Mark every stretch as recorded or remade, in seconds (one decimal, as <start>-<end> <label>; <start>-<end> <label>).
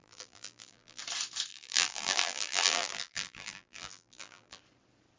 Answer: 0.0-1.0 remade; 1.0-1.5 recorded; 1.5-4.6 remade; 4.6-5.2 recorded